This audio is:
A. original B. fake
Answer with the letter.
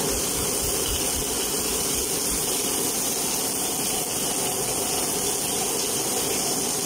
A